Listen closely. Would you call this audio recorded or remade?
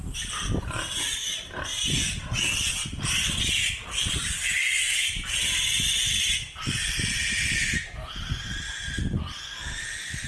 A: recorded